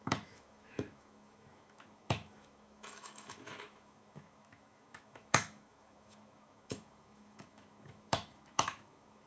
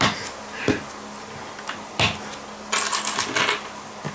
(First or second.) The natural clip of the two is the second